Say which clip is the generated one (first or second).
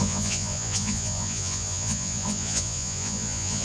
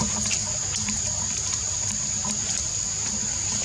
first